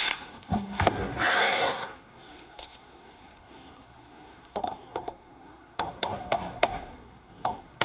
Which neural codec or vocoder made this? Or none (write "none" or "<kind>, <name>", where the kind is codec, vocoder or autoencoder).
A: codec, SNAC